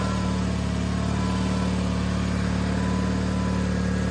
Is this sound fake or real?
real